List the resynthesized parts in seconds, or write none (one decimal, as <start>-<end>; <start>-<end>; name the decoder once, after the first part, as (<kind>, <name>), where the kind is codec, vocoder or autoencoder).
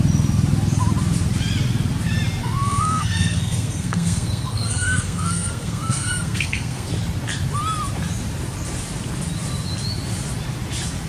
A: 2.4-6.9 (codec, SNAC)